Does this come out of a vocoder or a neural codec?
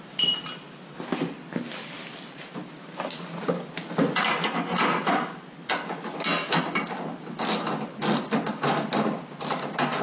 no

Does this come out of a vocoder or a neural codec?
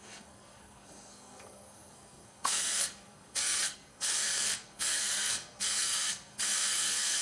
yes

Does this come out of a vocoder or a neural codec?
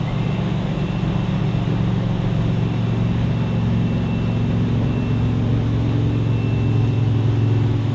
no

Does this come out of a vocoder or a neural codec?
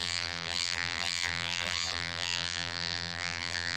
yes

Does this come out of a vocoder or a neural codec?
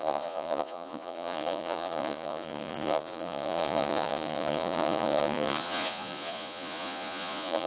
yes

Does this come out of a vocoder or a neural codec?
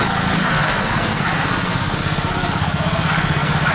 yes